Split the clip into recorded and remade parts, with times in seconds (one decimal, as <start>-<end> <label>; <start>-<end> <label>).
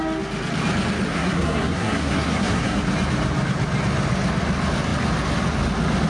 0.0-1.1 recorded; 1.1-2.8 remade; 2.8-6.1 recorded